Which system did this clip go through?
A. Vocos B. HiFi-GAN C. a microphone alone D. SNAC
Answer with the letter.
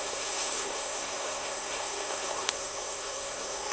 D